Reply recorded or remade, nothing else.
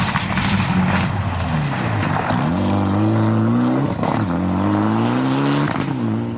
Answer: recorded